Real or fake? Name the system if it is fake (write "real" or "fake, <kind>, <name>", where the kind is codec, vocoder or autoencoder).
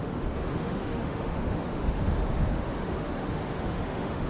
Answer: fake, autoencoder, DAC-VAE